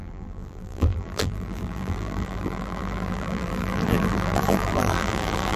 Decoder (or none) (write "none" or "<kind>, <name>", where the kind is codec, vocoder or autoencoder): vocoder, BigVGAN v2